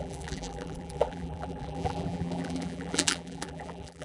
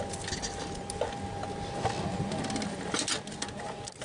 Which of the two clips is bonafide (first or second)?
second